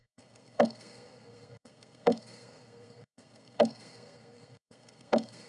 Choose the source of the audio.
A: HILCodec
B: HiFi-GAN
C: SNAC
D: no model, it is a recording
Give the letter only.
C